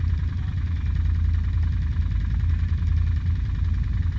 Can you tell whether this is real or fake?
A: real